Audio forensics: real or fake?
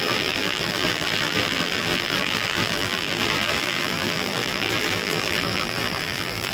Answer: fake